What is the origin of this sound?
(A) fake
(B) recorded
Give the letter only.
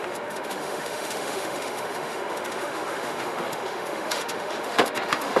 A